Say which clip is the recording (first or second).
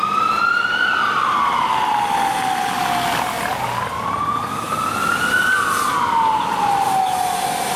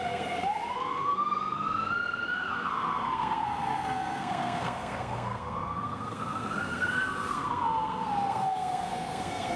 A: first